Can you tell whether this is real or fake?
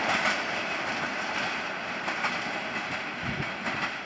real